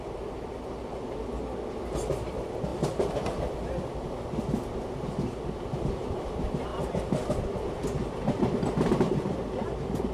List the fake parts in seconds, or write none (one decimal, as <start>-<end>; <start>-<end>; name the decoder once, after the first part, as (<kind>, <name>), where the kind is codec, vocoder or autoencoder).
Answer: none